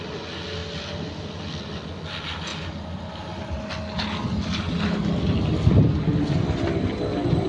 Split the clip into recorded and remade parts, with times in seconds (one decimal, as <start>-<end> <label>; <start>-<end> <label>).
0.0-7.5 recorded